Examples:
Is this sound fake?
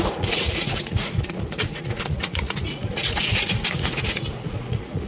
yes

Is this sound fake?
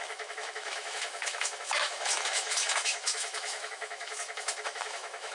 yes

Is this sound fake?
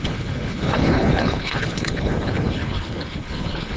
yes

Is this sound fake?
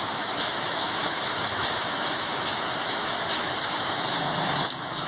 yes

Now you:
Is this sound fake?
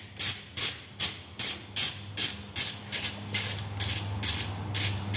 no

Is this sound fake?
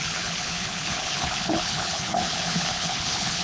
yes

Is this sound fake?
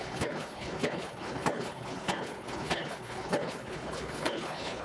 yes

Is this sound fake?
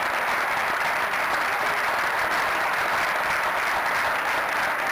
no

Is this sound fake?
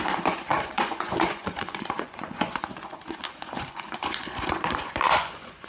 yes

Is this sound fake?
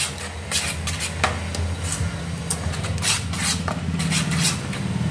no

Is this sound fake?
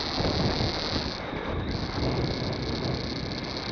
no